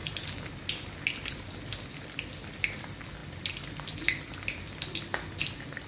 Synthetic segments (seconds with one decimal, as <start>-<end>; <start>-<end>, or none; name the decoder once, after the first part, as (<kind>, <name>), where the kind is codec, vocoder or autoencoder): none